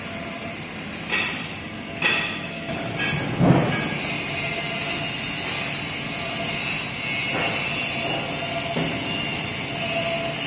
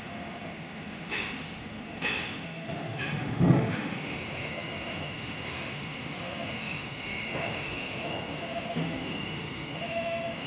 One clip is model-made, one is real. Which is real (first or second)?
first